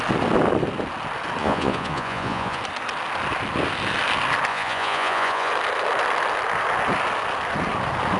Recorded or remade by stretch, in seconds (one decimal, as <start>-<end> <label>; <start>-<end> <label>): 0.0-1.4 recorded; 1.4-2.6 remade; 2.6-4.5 recorded; 4.5-5.5 remade; 5.5-8.2 recorded